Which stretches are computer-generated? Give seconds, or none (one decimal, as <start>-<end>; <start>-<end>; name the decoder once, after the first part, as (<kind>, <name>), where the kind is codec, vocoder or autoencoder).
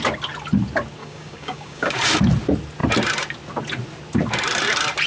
1.0-2.0 (codec, DAC)